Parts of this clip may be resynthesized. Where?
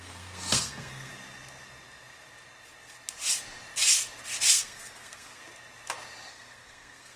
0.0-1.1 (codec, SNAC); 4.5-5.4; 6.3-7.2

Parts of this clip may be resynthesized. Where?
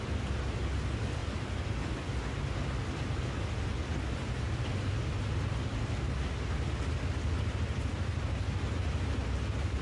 none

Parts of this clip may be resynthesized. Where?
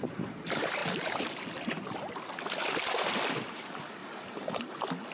none